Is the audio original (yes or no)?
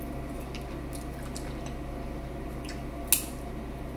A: yes